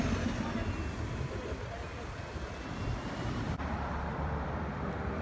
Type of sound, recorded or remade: remade